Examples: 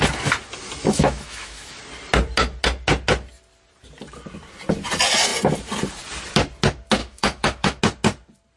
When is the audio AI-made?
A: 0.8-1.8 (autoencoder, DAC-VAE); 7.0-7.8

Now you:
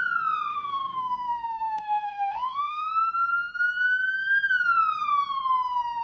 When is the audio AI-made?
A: 0.5-2.9 (autoencoder, DAC-VAE)

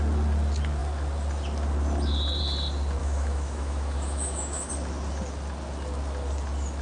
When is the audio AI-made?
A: 3.0-4.7 (autoencoder, DAC-VAE)

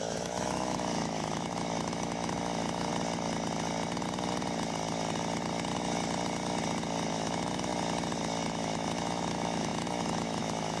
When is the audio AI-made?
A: 0.0-2.9 (autoencoder, DAC-VAE); 7.1-7.7; 8.5-10.8

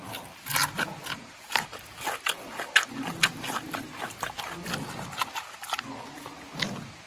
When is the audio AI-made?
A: none

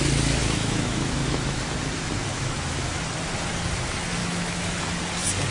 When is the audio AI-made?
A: 0.4-1.6 (autoencoder, DAC-VAE); 2.3-3.0; 4.2-4.8

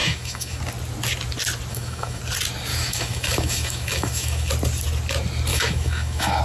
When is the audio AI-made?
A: 0.0-0.6 (autoencoder, DAC-VAE); 1.7-2.2; 2.7-4.5; 5.5-6.4